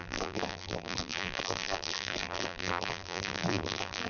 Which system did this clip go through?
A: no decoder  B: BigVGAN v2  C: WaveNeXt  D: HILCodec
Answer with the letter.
B